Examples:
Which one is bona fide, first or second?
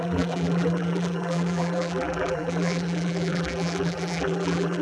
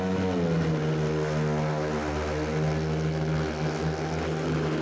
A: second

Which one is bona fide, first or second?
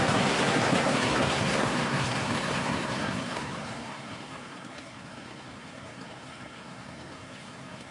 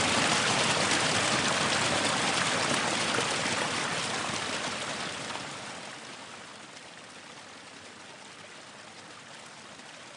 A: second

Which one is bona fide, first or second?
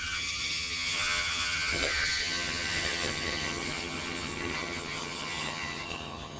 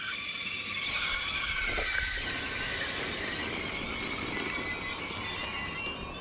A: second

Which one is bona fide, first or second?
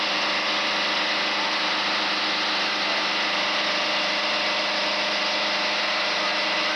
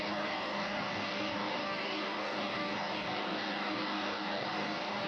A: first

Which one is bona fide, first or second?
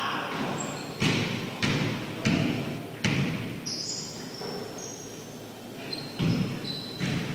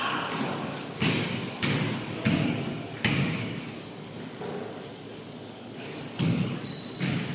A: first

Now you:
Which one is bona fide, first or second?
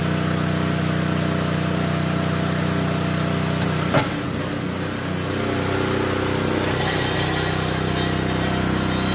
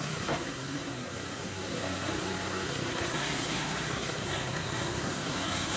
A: first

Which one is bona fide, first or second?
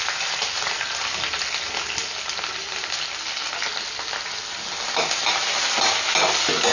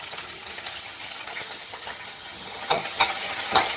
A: first